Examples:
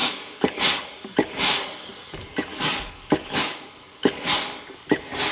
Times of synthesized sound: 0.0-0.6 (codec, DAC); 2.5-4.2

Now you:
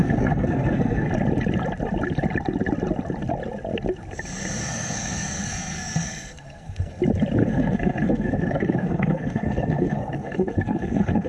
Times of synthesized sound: 0.0-1.1 (codec, SNAC); 4.6-7.0; 7.4-11.3

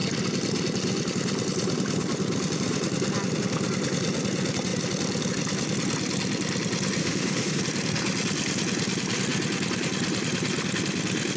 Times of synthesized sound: 7.0-7.6 (autoencoder, DAC-VAE)

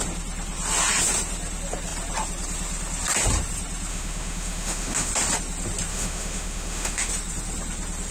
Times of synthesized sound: 3.9-5.1 (autoencoder, DAC-VAE); 5.9-7.1